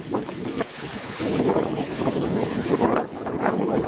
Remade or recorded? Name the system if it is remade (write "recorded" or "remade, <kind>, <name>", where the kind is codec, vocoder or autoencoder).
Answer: remade, codec, HILCodec